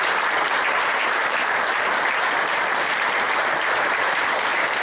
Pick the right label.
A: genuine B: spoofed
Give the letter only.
B